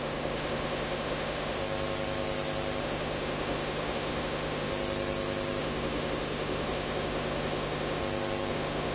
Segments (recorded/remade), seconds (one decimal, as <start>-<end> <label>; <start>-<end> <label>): 0.0-1.6 remade; 1.6-2.8 recorded; 2.8-4.7 remade; 4.7-5.6 recorded; 5.6-8.0 remade; 8.0-8.5 recorded; 8.5-8.9 remade